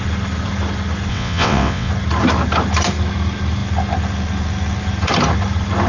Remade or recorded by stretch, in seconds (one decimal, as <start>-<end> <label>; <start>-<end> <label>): 0.0-1.1 recorded; 1.1-1.9 remade; 1.9-5.9 recorded